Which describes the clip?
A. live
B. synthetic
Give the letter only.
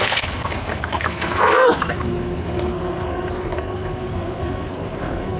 B